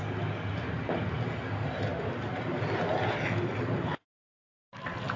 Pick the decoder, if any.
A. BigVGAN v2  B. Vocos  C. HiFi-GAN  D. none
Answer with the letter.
D